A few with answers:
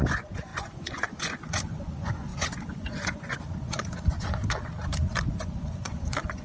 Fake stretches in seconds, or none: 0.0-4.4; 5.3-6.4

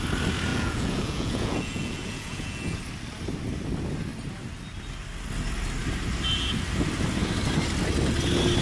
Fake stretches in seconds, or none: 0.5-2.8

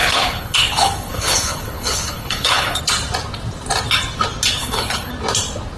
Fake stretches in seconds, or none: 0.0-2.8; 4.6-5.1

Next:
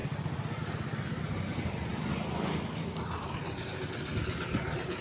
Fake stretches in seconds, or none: none

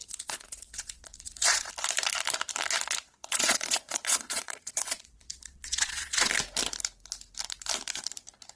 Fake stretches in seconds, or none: 0.0-1.7; 3.2-6.3

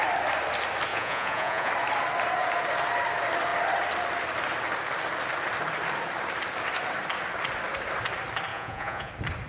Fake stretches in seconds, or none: 0.9-1.7; 8.5-9.1

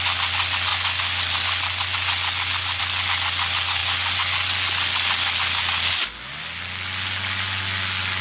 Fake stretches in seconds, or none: none

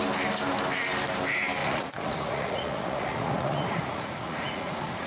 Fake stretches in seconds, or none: 1.6-5.1